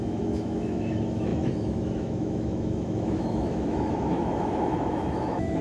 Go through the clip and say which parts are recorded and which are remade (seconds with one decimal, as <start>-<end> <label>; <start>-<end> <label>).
0.0-5.6 remade